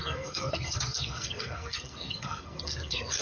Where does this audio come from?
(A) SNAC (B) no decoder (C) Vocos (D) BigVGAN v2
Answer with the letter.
A